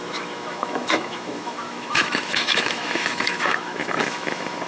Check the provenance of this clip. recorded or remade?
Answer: remade